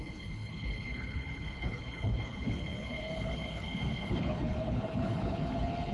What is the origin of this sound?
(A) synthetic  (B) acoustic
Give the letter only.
A